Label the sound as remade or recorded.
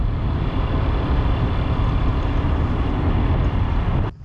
remade